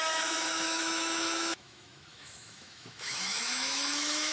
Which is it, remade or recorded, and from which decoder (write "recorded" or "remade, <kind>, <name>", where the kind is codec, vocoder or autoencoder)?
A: remade, autoencoder, DAC-VAE